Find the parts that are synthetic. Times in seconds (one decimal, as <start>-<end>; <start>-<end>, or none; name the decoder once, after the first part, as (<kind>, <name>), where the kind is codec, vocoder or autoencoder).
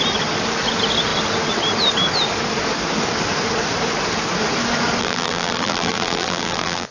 5.0-6.9 (vocoder, BigVGAN v2)